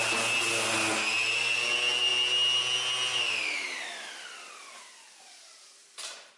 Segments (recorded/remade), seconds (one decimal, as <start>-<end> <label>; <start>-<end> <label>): 0.0-6.4 recorded